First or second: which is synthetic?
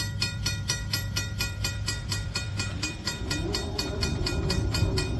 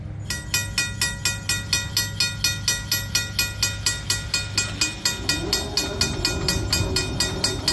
first